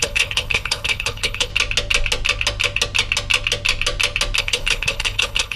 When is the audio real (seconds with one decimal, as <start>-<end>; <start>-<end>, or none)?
1.5-4.4